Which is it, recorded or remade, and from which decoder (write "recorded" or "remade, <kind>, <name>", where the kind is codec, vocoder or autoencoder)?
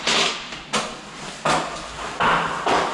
recorded